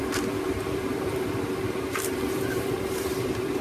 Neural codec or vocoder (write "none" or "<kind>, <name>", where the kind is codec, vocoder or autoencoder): vocoder, BigVGAN v2